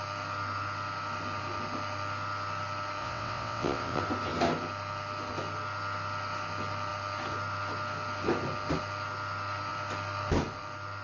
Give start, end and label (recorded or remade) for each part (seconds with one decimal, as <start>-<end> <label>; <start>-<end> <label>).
0.0-3.0 recorded; 3.0-4.0 remade; 4.0-11.0 recorded